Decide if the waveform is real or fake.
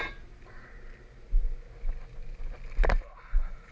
real